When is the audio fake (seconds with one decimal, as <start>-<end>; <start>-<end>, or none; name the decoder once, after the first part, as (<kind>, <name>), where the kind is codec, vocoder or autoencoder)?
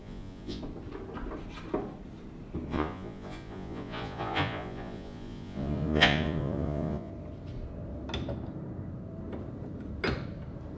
0.0-0.6 (vocoder, Vocos); 2.7-7.1